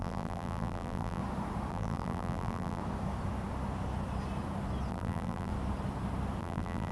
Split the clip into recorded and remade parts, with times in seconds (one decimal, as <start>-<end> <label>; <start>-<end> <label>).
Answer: 0.0-1.2 remade; 1.2-1.7 recorded; 1.7-2.8 remade; 2.8-4.9 recorded; 4.9-5.5 remade; 5.5-6.4 recorded; 6.4-6.9 remade